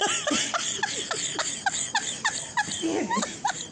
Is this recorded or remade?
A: recorded